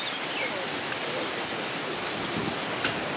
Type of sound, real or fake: real